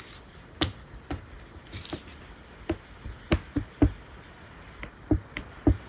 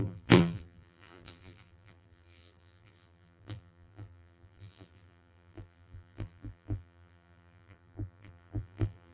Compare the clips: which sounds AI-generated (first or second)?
second